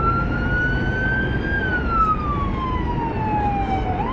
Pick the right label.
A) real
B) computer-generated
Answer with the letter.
A